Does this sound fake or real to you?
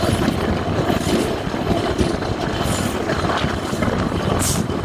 real